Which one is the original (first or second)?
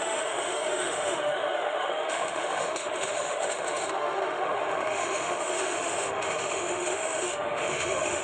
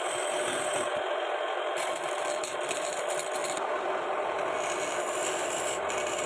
second